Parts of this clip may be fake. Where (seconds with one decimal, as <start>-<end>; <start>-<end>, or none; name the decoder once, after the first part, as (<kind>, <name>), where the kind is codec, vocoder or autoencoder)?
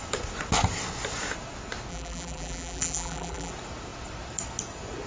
1.9-3.5 (vocoder, BigVGAN v2)